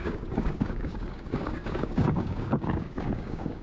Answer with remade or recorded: remade